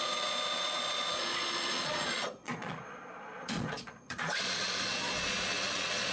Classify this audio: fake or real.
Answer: fake